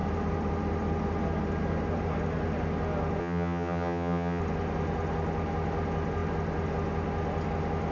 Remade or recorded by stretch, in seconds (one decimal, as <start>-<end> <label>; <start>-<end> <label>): 0.0-3.2 recorded; 3.2-4.4 remade; 4.4-7.9 recorded